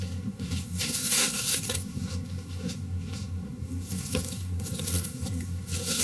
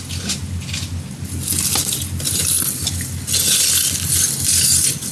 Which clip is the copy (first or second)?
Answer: first